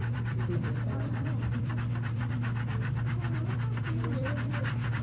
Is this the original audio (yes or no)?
no